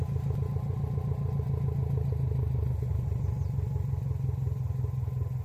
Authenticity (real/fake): real